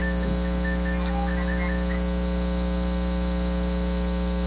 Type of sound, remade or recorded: recorded